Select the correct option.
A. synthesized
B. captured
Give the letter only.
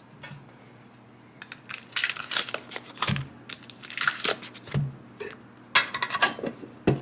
B